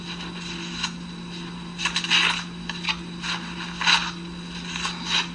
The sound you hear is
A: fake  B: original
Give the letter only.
B